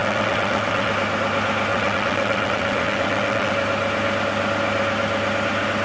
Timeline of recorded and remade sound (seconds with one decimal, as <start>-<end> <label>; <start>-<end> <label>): 0.0-0.9 remade; 0.9-1.7 recorded; 1.7-3.5 remade; 3.5-5.8 recorded